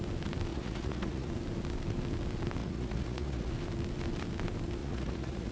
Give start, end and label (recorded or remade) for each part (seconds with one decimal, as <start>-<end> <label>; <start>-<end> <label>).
0.0-0.5 recorded; 0.5-1.3 remade; 1.3-2.6 recorded; 2.6-3.5 remade; 3.5-4.8 recorded; 4.8-5.5 remade